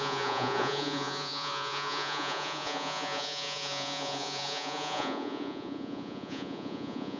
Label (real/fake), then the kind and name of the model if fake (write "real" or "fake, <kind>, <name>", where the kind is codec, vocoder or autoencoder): fake, vocoder, Vocos